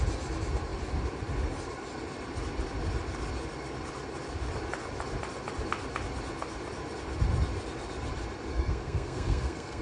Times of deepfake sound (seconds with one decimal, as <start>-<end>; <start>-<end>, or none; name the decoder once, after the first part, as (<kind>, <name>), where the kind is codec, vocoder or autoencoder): 8.5-9.8 (codec, SNAC)